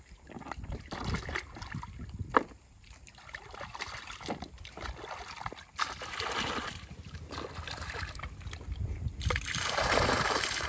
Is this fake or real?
real